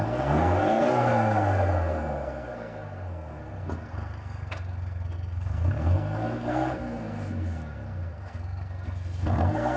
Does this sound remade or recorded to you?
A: remade